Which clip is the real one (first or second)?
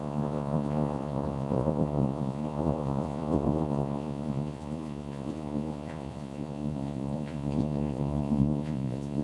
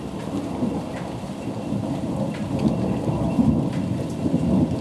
second